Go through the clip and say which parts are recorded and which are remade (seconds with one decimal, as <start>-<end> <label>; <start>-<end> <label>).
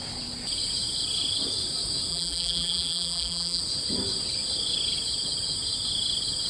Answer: 0.0-2.1 recorded; 2.1-3.6 remade; 3.6-6.5 recorded